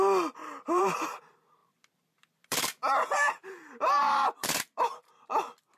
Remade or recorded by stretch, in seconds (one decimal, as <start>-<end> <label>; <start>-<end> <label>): 0.0-0.4 recorded; 0.4-1.2 remade; 1.2-1.6 recorded; 1.6-5.1 remade; 5.1-5.8 recorded